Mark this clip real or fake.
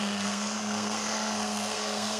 fake